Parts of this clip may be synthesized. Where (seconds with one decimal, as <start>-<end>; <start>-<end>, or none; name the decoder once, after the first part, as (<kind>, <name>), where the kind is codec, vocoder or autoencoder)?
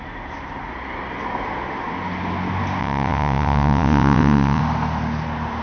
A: 2.8-4.6 (vocoder, WaveNeXt)